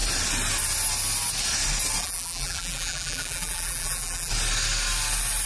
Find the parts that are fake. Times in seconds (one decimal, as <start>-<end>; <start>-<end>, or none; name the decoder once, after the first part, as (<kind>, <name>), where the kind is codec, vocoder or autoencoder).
2.0-4.3 (vocoder, BigVGAN v2)